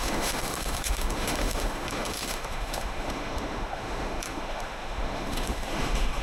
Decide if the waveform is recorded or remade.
remade